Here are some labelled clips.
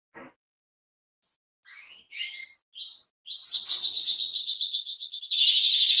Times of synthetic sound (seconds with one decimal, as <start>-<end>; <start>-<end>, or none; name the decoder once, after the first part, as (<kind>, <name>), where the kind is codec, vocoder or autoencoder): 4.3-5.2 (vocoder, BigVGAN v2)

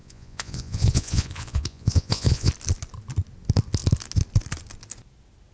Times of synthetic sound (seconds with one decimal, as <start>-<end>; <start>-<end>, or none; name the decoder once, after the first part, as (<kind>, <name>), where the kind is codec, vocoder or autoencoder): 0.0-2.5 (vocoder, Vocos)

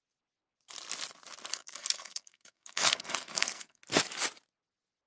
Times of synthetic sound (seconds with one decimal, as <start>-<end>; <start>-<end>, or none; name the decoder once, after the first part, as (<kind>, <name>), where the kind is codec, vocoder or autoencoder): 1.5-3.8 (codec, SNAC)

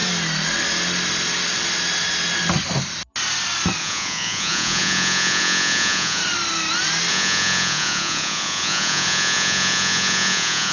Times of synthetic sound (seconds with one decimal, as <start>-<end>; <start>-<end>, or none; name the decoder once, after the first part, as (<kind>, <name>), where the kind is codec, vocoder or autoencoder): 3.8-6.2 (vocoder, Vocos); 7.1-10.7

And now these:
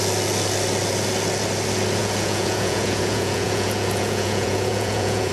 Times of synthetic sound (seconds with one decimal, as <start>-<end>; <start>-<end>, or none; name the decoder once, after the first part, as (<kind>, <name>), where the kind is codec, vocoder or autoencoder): 2.0-5.3 (vocoder, Vocos)

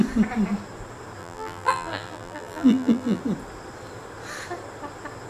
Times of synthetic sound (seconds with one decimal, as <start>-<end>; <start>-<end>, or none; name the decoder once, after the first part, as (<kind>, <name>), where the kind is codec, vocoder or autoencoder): 1.2-3.2 (vocoder, BigVGAN v2)